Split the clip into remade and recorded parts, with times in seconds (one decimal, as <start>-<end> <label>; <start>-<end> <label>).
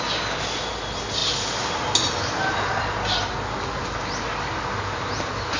0.0-5.6 recorded